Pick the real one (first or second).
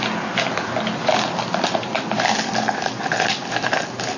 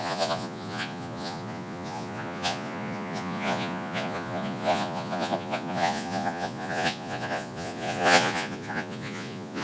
first